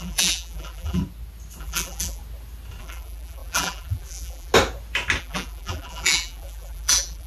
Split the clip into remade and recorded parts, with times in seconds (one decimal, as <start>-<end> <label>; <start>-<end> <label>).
0.0-1.0 remade; 1.0-1.6 recorded; 1.6-2.2 remade; 2.2-2.8 recorded; 2.8-4.5 remade; 4.5-5.2 recorded; 5.2-7.3 remade